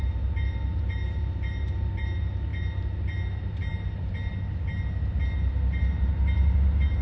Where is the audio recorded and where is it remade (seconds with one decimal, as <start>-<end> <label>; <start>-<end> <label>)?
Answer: 0.0-7.0 recorded